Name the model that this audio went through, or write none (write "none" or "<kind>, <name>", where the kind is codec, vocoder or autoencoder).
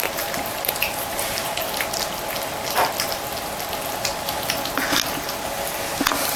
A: none